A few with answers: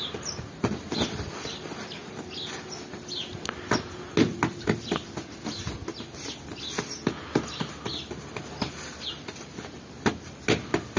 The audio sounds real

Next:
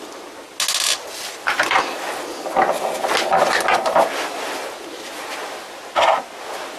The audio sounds real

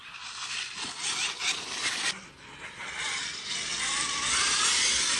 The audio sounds real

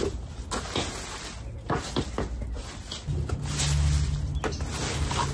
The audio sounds real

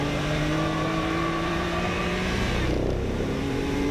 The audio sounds fake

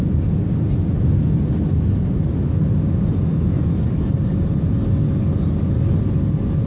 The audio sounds real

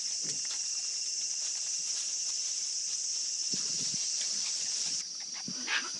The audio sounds fake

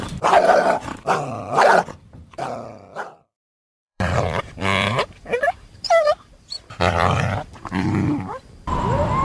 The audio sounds fake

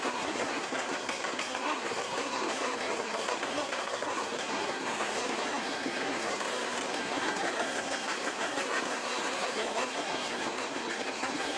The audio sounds fake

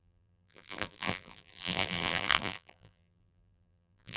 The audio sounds fake